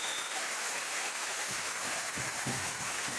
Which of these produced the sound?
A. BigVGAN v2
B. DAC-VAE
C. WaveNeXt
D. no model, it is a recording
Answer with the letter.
B